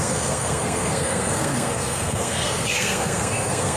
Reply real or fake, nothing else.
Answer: fake